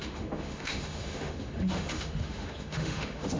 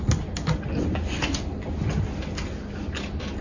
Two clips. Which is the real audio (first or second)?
second